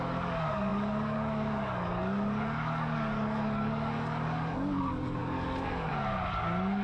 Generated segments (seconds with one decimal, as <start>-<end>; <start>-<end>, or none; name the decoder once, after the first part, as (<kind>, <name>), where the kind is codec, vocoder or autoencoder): 0.0-6.8 (codec, DAC)